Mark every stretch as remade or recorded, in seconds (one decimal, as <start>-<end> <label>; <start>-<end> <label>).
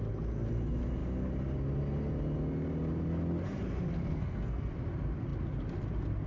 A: 0.0-4.0 recorded; 4.0-4.7 remade; 4.7-6.3 recorded